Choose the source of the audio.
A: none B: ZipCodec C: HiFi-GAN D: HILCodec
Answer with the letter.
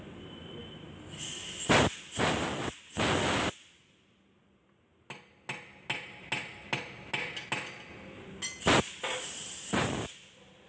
A